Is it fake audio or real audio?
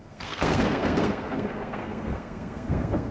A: fake